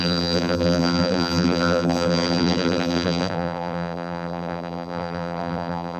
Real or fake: fake